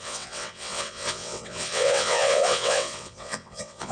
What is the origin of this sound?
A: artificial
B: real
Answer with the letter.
A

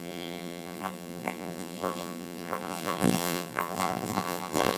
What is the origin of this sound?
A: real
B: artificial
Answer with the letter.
B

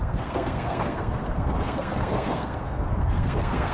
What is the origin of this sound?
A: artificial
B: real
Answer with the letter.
A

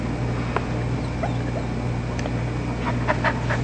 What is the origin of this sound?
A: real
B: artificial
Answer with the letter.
A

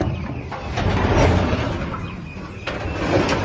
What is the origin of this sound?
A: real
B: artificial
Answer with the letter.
A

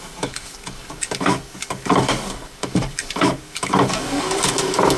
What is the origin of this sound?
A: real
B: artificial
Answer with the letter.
B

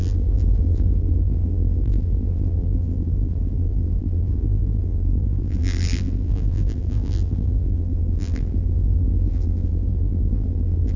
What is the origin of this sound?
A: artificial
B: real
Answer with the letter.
A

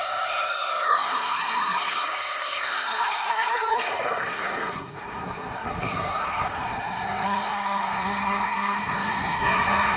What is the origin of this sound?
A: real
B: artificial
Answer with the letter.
B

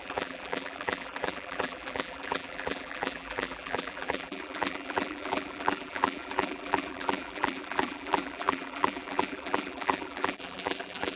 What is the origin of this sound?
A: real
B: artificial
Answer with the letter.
B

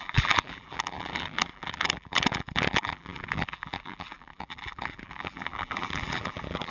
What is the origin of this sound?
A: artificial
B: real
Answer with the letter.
A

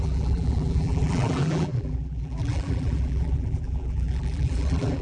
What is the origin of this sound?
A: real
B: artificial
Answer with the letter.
B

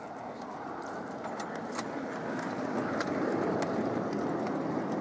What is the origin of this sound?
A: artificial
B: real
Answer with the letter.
B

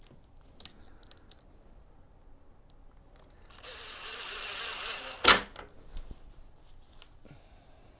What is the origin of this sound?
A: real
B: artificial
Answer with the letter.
A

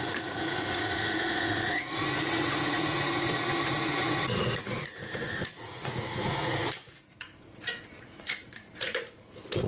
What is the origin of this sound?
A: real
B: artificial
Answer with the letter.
B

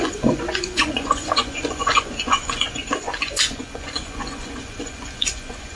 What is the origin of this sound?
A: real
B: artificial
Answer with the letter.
B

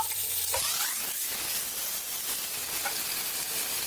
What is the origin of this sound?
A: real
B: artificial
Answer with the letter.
A